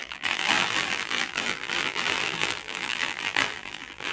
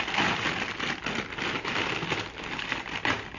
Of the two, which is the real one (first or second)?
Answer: second